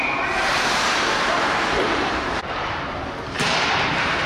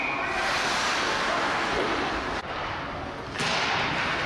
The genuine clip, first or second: second